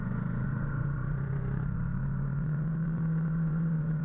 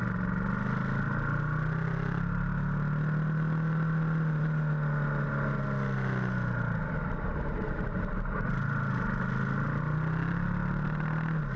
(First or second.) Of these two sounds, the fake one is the first